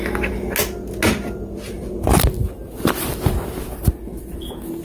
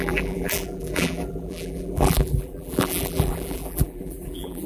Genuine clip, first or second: first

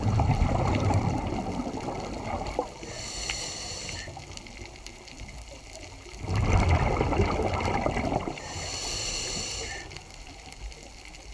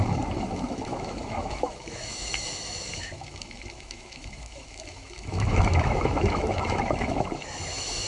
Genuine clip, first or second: first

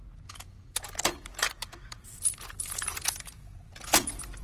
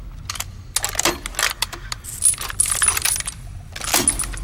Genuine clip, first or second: second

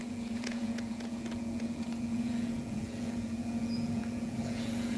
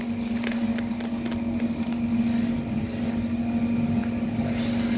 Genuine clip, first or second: second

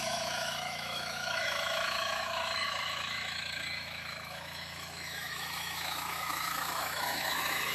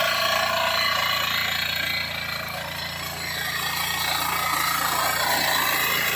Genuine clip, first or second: second